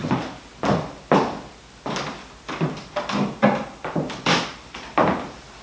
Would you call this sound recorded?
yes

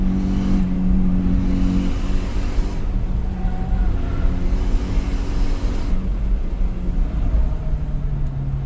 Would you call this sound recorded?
yes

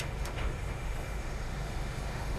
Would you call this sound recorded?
no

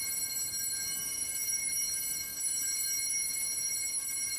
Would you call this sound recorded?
yes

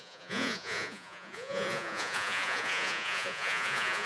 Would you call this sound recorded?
no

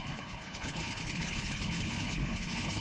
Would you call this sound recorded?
no